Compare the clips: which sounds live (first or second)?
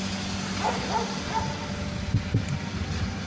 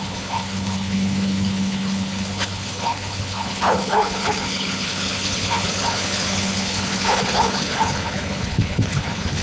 first